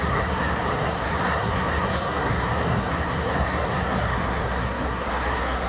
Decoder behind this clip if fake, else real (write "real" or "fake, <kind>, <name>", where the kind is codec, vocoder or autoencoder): fake, codec, SNAC